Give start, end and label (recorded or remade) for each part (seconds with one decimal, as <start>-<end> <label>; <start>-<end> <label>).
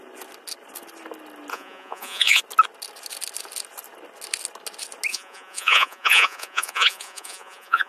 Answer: 0.0-1.5 recorded; 1.5-2.4 remade; 2.4-5.1 recorded; 5.1-7.9 remade